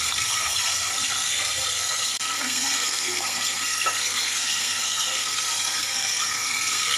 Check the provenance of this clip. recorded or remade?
remade